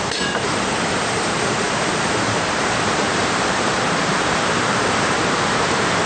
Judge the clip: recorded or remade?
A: remade